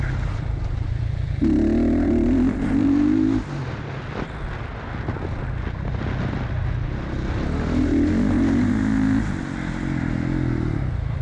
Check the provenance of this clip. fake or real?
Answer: real